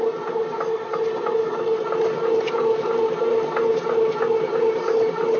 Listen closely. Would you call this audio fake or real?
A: real